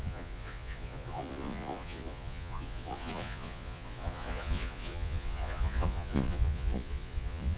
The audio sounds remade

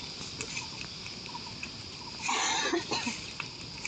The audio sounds recorded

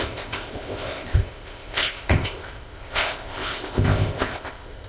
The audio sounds remade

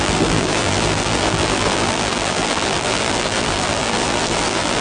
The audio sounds remade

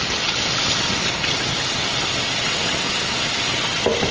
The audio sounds recorded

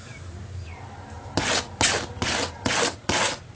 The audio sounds recorded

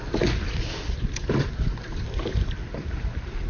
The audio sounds recorded